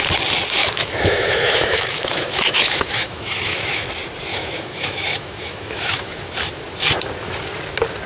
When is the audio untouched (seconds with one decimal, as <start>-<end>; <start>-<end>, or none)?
0.0-0.6; 3.9-4.3; 6.3-8.1